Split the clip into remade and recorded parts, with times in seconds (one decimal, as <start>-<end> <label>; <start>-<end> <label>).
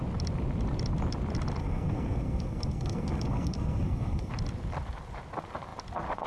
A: 0.0-1.6 recorded; 1.6-4.3 remade; 4.3-6.3 recorded